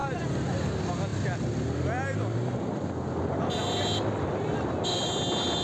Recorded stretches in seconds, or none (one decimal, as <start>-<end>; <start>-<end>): 0.7-5.6